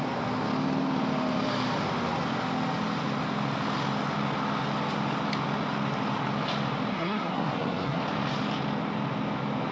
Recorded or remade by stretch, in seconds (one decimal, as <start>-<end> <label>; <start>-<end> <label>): 0.0-6.9 recorded; 6.9-8.0 remade; 8.0-9.7 recorded